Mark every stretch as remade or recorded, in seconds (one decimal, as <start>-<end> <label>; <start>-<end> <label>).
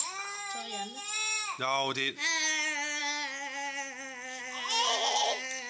0.0-5.7 recorded